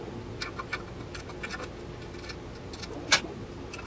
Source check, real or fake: real